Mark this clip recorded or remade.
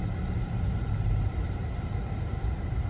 remade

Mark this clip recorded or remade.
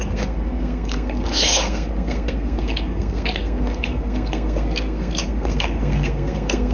remade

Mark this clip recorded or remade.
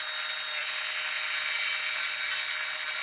recorded